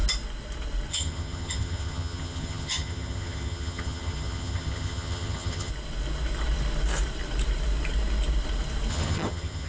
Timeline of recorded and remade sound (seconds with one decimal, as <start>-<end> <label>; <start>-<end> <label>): 0.0-0.9 recorded; 0.9-5.7 remade; 5.7-8.9 recorded; 8.9-9.7 remade